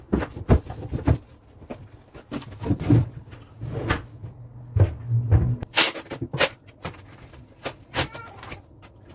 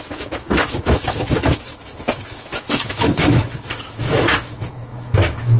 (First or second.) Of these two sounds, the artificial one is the second